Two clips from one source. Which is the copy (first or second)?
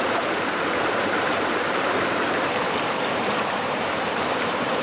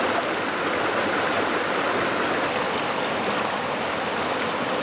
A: first